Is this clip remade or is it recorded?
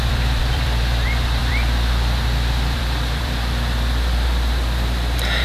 remade